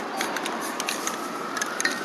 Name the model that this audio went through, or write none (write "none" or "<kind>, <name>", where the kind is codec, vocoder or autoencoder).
none